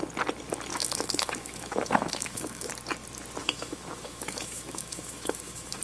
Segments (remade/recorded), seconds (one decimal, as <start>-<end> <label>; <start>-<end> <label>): 0.0-0.7 recorded; 0.7-2.7 remade; 2.7-3.4 recorded; 3.4-5.8 remade